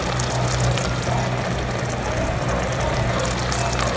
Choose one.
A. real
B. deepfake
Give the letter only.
A